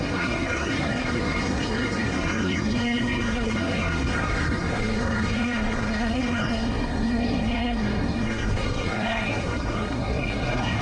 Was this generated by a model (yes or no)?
yes